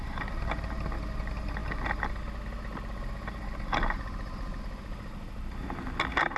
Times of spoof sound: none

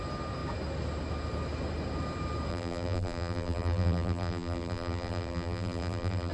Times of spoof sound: 2.5-6.3 (vocoder, BigVGAN v2)

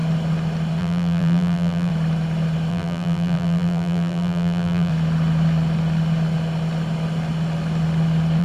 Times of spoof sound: 0.8-1.9 (vocoder, BigVGAN v2); 2.7-4.9

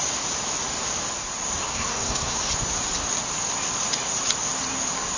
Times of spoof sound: 1.7-2.5 (codec, SNAC)